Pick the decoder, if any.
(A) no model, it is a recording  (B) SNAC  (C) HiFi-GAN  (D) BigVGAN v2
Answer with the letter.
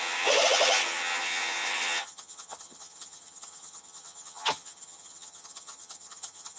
C